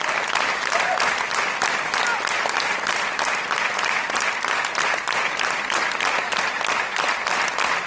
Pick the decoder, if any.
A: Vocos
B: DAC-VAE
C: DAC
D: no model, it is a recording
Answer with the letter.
D